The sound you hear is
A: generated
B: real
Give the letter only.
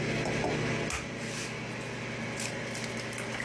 B